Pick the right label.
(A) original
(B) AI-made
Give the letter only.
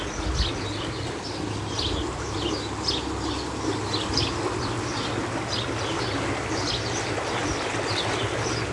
A